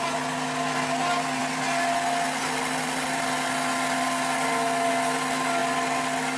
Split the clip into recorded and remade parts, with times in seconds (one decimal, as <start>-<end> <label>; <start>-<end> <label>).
0.0-6.4 recorded